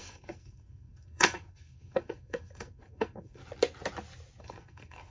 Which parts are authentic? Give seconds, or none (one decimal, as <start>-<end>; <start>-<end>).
3.4-4.4